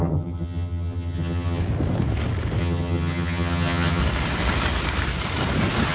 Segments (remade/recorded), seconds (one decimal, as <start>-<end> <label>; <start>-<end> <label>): 0.0-1.6 remade; 1.6-2.6 recorded; 2.6-4.0 remade; 4.0-5.9 recorded